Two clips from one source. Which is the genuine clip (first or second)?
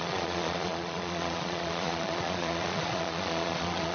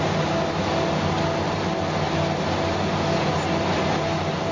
second